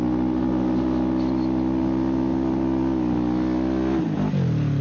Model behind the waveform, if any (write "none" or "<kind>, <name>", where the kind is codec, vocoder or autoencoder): none